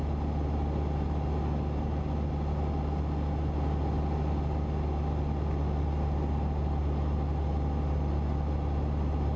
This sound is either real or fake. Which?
real